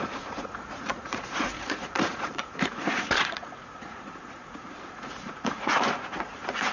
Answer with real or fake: fake